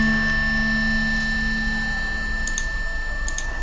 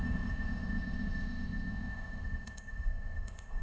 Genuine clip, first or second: first